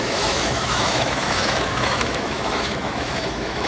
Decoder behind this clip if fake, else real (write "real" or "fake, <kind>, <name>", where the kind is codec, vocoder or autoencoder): fake, autoencoder, DAC-VAE